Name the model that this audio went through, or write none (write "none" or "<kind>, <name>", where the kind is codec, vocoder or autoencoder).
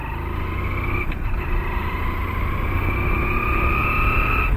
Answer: none